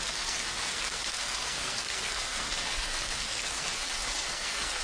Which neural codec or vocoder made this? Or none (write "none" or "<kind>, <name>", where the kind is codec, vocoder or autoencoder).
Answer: codec, SNAC